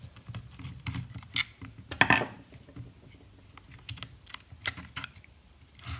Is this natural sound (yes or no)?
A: yes